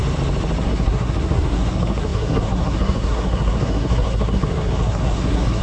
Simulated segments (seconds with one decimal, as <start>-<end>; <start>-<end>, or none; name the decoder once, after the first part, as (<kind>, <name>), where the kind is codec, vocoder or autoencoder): 0.6-5.6 (codec, SNAC)